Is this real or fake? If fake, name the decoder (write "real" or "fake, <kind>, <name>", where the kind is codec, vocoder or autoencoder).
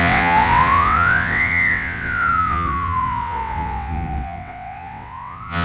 fake, vocoder, WaveNeXt